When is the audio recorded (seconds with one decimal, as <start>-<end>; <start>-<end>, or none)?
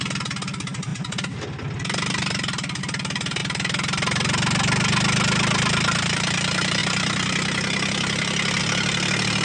0.0-9.4